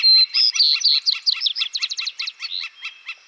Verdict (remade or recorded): recorded